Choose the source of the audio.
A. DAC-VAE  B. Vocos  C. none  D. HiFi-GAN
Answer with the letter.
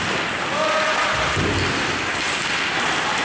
C